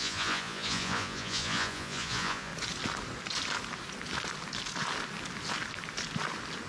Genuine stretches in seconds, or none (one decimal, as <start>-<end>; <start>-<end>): 2.5-6.7